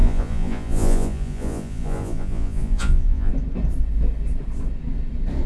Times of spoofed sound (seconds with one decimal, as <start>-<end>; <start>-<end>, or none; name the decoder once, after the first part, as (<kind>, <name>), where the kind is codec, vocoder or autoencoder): 0.0-3.3 (vocoder, Vocos)